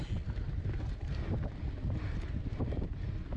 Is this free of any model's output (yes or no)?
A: yes